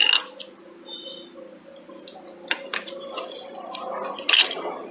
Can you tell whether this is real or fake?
real